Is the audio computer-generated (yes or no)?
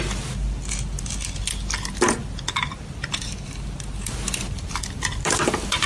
no